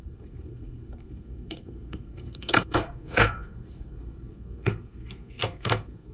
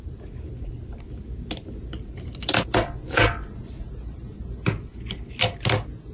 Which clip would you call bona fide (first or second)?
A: second